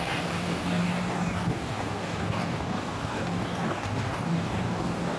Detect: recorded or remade remade